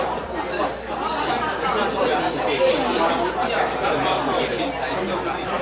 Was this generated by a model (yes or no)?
no